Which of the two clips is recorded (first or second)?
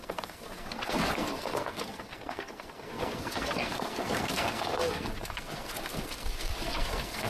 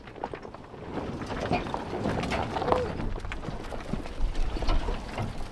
second